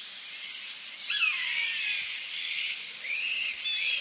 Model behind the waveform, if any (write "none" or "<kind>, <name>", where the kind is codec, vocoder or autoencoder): none